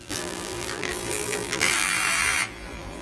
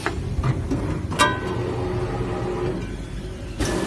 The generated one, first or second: first